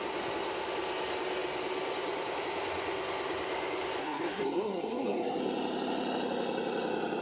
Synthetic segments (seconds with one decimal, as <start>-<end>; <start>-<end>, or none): 4.0-5.4